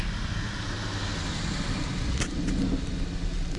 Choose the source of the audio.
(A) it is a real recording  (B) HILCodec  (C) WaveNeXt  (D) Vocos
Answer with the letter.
A